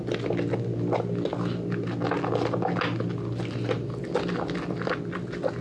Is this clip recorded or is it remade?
recorded